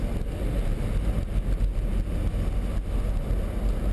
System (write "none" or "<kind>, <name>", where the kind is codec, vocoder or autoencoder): none